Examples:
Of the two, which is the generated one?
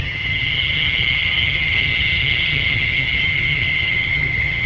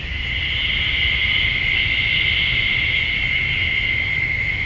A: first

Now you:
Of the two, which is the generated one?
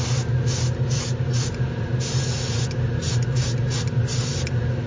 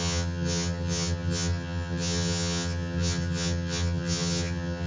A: second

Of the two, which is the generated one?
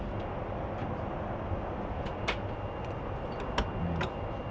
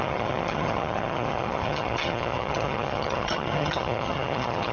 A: second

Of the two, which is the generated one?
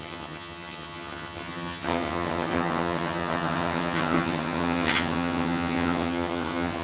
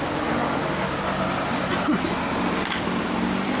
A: first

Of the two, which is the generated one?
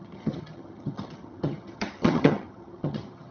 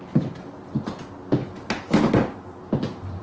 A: first